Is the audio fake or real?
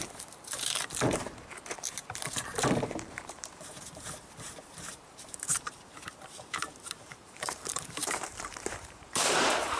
fake